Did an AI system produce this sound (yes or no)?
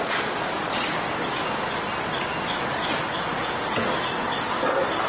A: no